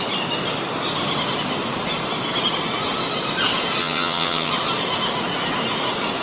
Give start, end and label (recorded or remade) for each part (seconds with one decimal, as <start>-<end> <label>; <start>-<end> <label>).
0.0-3.8 recorded; 3.8-4.5 remade; 4.5-6.2 recorded